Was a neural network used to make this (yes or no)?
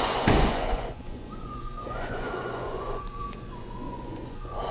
yes